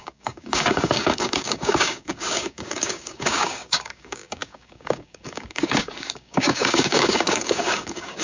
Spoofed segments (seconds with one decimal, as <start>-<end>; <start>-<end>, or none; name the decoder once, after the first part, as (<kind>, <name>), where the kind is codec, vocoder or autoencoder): 0.0-8.2 (codec, DAC)